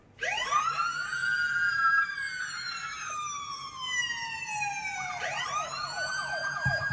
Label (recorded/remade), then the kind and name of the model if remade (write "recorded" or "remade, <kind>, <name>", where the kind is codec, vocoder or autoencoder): remade, vocoder, BigVGAN v2